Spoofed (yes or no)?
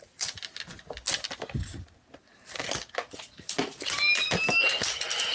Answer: no